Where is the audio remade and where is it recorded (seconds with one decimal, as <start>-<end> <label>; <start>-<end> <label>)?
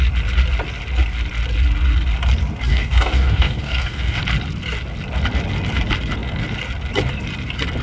0.0-2.7 recorded; 2.7-4.2 remade; 4.2-7.8 recorded